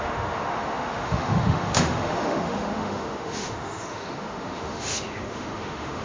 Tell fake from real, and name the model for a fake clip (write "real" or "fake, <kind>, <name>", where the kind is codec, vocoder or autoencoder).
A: fake, autoencoder, DAC-VAE